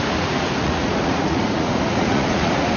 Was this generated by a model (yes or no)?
yes